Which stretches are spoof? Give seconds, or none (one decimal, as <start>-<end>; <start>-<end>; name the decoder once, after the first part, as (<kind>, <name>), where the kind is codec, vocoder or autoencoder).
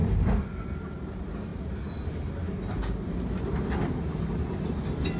none